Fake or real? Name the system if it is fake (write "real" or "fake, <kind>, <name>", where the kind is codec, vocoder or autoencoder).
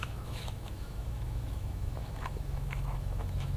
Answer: fake, autoencoder, DAC-VAE